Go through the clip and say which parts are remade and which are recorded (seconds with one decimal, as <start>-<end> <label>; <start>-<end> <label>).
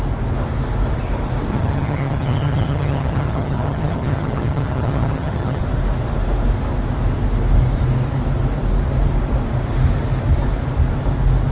0.0-1.5 recorded; 1.5-5.6 remade; 5.6-11.5 recorded